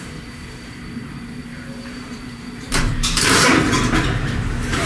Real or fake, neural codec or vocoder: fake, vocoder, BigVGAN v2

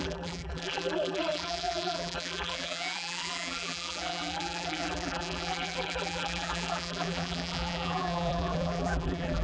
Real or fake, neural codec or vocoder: fake, vocoder, BigVGAN v2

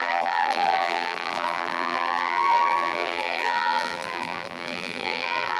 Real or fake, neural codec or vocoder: fake, vocoder, BigVGAN v2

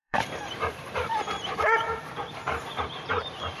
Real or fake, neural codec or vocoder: fake, vocoder, BigVGAN v2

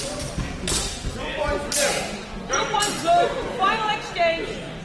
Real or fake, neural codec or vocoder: real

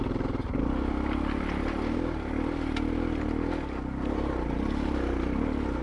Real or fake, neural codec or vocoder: real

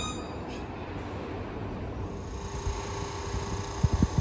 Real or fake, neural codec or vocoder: real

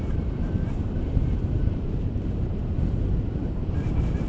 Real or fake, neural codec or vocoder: fake, vocoder, BigVGAN v2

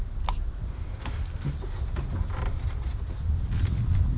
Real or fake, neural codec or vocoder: real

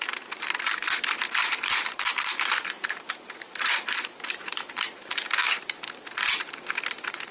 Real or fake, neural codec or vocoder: fake, vocoder, BigVGAN v2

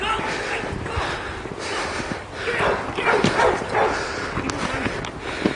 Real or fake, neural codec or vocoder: real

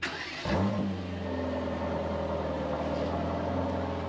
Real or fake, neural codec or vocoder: real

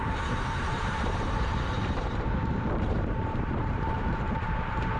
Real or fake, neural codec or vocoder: fake, vocoder, BigVGAN v2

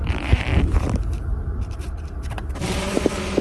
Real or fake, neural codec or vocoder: fake, vocoder, BigVGAN v2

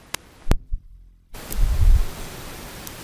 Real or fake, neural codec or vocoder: fake, vocoder, BigVGAN v2